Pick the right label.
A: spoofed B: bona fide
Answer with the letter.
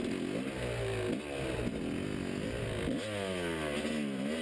B